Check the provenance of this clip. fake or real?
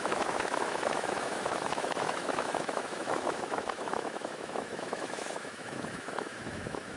fake